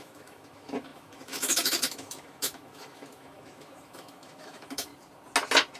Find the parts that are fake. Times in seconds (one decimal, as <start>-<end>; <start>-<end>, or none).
0.0-4.9